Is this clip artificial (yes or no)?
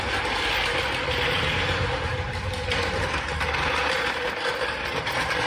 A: no